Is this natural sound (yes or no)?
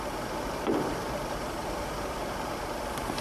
no